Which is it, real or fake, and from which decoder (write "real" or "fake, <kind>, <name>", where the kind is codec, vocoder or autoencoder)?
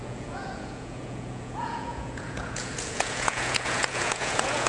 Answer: fake, vocoder, Vocos